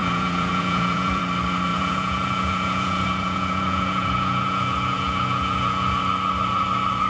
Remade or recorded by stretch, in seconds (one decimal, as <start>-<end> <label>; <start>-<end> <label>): 0.0-1.2 remade; 1.2-1.7 recorded; 1.7-6.0 remade; 6.0-7.1 recorded